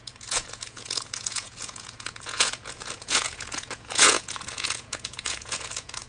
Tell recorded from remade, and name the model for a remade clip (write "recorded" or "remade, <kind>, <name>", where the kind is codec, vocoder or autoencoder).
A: remade, vocoder, Vocos